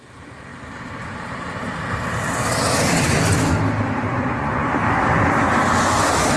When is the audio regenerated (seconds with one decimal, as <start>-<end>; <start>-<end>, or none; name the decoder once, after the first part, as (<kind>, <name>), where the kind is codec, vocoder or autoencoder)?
4.0-4.8 (vocoder, Vocos)